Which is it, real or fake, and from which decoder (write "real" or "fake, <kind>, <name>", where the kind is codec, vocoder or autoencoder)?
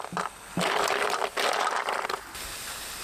real